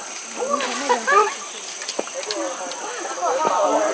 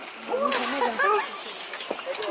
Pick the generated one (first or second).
first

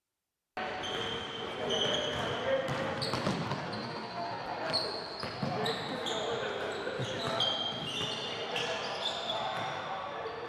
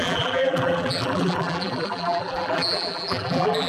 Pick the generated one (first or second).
second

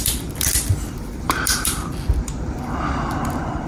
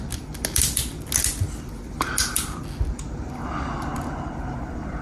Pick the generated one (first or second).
first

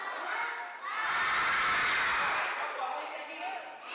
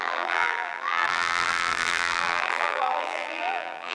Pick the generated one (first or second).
second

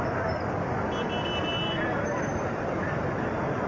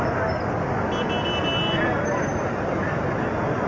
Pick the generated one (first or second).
first